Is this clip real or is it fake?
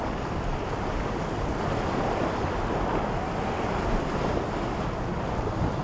real